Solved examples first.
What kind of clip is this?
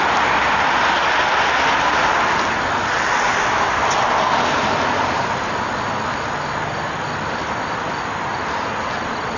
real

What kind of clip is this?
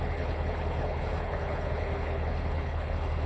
fake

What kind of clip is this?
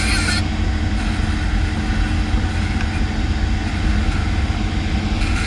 real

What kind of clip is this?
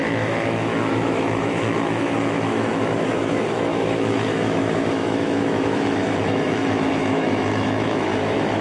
fake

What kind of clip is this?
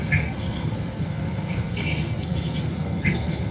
fake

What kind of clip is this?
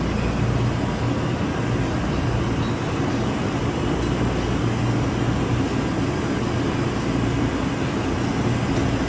real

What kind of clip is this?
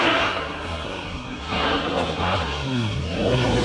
fake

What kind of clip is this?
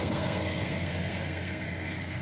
fake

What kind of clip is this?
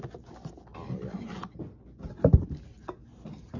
real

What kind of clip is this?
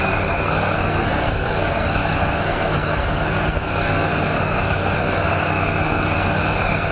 fake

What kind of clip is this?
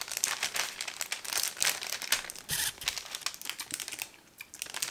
real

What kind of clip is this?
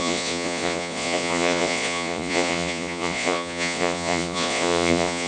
fake